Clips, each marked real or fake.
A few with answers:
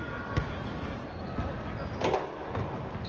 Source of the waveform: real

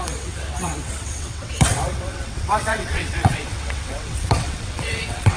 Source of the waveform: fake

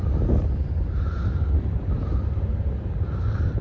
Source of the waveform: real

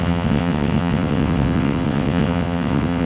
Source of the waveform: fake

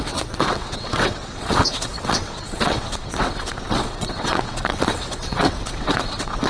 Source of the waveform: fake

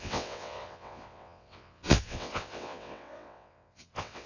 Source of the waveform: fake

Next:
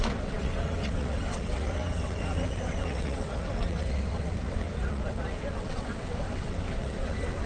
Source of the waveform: fake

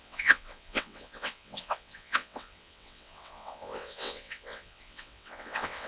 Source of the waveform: fake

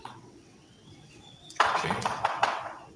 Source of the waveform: fake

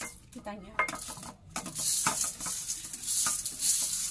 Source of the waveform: real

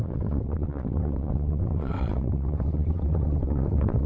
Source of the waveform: fake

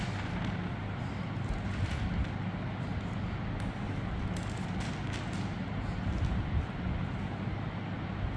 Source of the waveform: real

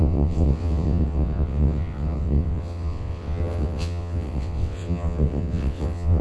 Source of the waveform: fake